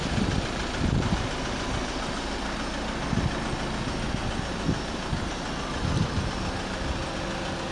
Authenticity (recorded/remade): recorded